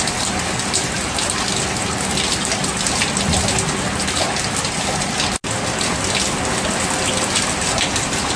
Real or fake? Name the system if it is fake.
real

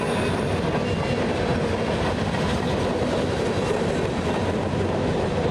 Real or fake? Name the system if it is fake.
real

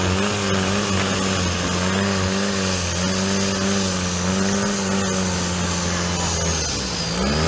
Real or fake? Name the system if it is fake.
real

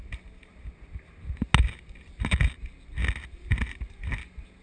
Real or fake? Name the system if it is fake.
real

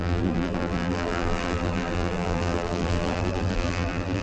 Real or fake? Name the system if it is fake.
fake, vocoder, BigVGAN v2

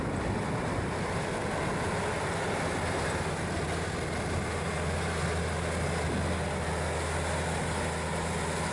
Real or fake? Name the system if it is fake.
real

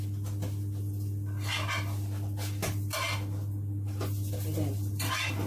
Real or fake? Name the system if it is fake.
real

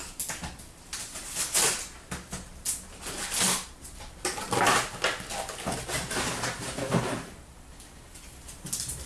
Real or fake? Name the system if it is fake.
real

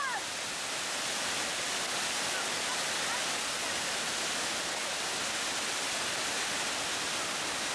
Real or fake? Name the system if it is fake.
real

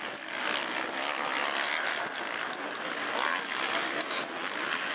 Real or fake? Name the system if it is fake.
real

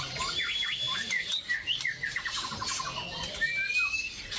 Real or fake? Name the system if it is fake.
fake, vocoder, BigVGAN v2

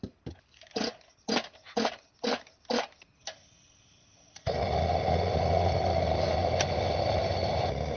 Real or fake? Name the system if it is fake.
real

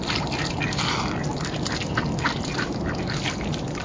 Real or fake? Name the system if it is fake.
real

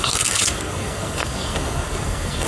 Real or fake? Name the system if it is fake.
fake, codec, SNAC